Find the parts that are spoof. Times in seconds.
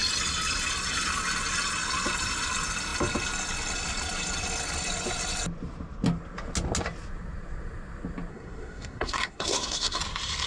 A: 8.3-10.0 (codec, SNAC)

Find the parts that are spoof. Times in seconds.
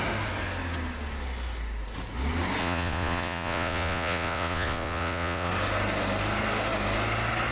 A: 2.6-5.5 (vocoder, Vocos)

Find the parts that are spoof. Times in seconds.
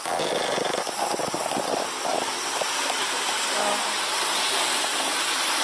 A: none